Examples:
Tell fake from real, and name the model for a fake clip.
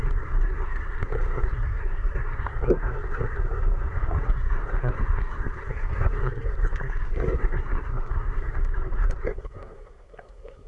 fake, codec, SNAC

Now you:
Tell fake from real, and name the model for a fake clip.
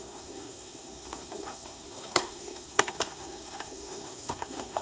fake, codec, SNAC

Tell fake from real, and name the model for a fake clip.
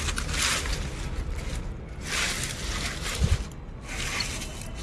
real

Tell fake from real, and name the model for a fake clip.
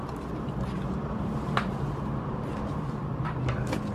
real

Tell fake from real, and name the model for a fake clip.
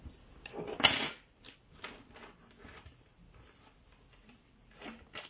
fake, vocoder, BigVGAN v2